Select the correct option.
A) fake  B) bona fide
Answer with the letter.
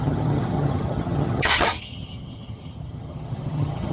A